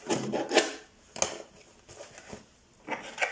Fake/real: real